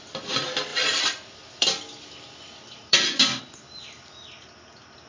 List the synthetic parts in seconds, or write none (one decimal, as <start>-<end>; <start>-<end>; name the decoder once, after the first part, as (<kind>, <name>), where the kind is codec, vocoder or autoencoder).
0.7-3.4 (vocoder, BigVGAN v2)